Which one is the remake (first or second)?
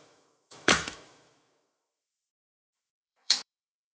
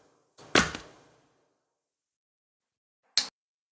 first